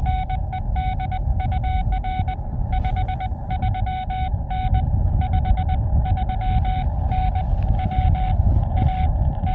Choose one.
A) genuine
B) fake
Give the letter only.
A